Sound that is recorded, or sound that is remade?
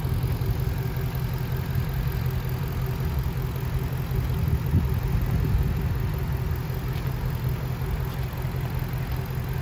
recorded